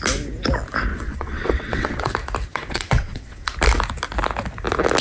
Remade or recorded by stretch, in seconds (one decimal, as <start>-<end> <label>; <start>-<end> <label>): 0.0-0.9 recorded; 0.9-2.1 remade; 2.1-2.5 recorded; 2.5-3.5 remade; 3.5-5.0 recorded